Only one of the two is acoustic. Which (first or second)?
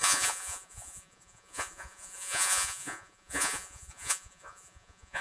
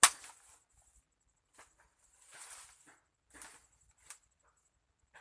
second